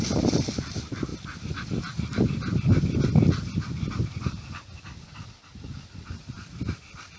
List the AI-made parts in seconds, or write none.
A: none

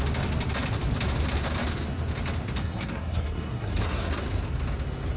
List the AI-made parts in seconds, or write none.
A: 2.6-4.1 (codec, SNAC)

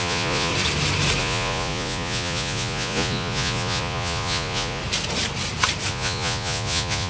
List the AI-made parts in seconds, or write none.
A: 0.0-0.5 (vocoder, Vocos); 1.2-4.8; 5.9-7.1

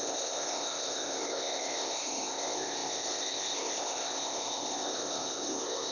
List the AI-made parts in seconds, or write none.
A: 0.0-5.9 (codec, ZipCodec)

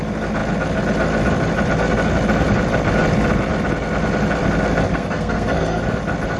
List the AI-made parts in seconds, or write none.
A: 4.9-5.8 (codec, SNAC)

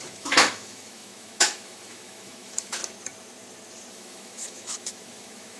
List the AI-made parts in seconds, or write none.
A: 0.0-2.8 (autoencoder, DAC-VAE); 3.9-5.6

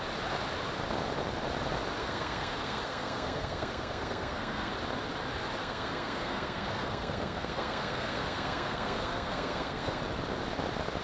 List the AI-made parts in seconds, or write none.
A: 2.0-4.7 (codec, SNAC); 5.6-10.0

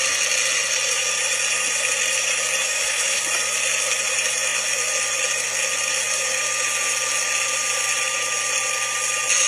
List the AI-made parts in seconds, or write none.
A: 2.6-3.2 (autoencoder, DAC-VAE)